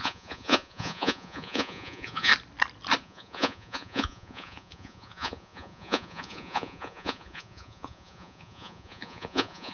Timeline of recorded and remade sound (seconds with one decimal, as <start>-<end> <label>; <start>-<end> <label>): 0.0-2.3 remade; 2.3-3.0 recorded; 3.0-9.7 remade